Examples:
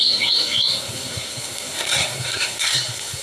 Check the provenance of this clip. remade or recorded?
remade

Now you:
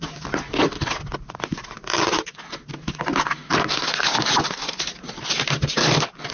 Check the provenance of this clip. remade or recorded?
recorded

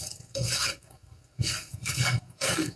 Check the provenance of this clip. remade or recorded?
remade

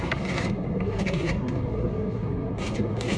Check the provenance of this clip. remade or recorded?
remade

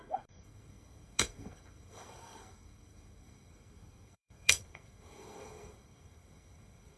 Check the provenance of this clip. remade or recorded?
remade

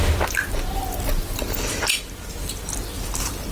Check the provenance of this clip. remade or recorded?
recorded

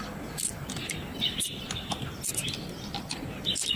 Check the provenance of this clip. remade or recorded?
recorded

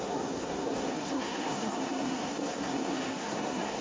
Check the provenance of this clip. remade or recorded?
remade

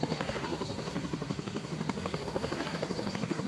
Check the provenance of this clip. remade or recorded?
remade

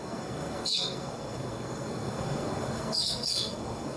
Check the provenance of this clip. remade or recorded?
remade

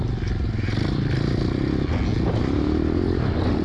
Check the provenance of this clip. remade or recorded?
recorded